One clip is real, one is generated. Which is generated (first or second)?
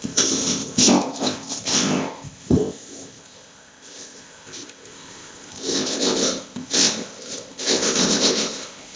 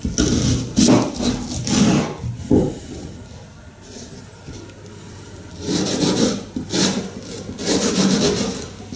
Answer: first